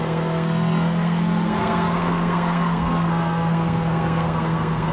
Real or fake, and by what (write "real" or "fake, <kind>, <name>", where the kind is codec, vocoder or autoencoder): fake, codec, SNAC